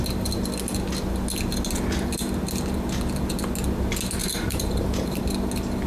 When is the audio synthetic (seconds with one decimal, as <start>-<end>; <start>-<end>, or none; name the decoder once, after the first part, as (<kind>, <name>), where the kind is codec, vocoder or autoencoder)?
4.2-5.2 (vocoder, BigVGAN v2)